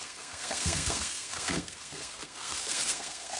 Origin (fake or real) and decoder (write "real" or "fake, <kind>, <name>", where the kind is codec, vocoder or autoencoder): fake, codec, SNAC